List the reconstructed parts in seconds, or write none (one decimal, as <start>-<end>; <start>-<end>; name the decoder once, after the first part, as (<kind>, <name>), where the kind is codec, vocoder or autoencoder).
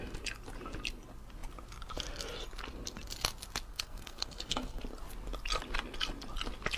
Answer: 3.7-4.8 (codec, SNAC)